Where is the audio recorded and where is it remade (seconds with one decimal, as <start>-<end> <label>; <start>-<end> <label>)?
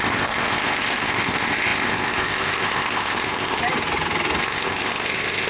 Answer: 0.0-3.6 remade; 3.6-4.4 recorded; 4.4-5.5 remade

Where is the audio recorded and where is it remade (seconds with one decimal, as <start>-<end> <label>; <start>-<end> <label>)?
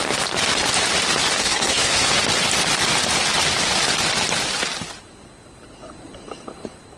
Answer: 0.0-1.4 recorded; 1.4-2.2 remade; 2.2-7.0 recorded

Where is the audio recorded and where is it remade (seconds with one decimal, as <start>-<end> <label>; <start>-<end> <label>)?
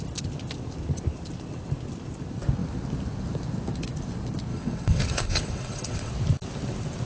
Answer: 0.0-4.5 recorded; 4.5-6.1 remade; 6.1-7.1 recorded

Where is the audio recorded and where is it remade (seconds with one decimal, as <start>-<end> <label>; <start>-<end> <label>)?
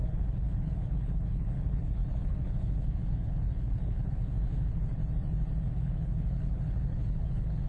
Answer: 0.0-5.0 remade; 5.0-5.6 recorded; 5.6-7.7 remade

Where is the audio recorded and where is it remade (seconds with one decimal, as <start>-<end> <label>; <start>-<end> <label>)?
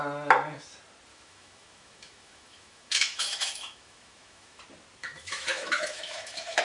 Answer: 0.0-1.1 recorded; 1.1-4.6 remade; 4.6-5.0 recorded; 5.0-6.6 remade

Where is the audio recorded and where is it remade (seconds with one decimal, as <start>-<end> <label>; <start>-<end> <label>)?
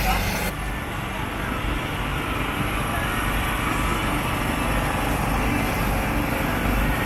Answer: 0.0-7.1 recorded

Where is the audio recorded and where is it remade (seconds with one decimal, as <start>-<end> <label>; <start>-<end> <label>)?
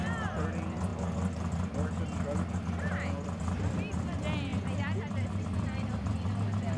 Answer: 0.0-6.8 recorded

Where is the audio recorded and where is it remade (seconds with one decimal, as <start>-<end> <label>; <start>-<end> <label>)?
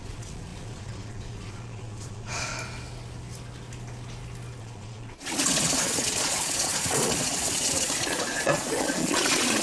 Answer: 0.0-2.5 remade; 2.5-4.6 recorded; 4.6-9.6 remade